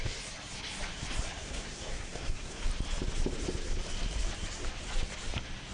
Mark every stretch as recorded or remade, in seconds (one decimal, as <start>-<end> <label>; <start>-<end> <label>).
0.0-1.4 recorded; 1.4-2.7 remade; 2.7-5.7 recorded